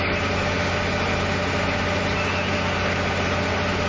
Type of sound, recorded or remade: recorded